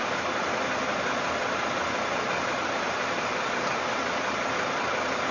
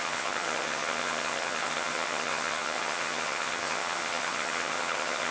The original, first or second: first